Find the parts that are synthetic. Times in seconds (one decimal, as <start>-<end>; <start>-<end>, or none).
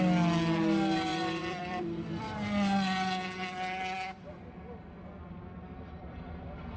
1.1-2.2